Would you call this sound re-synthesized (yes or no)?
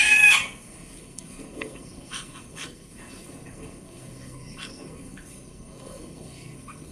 yes